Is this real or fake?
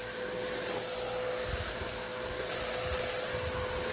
real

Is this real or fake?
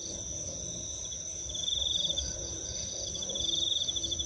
fake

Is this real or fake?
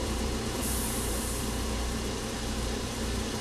fake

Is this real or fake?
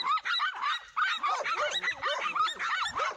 real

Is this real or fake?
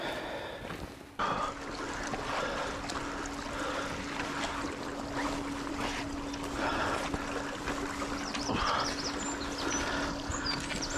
real